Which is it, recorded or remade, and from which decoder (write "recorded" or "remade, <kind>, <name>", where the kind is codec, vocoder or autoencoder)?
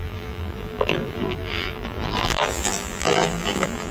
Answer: remade, vocoder, BigVGAN v2